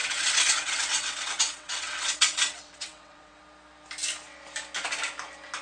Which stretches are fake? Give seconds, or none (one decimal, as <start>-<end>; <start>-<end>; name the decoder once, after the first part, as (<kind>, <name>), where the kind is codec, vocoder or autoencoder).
0.0-3.4 (vocoder, WaveNeXt)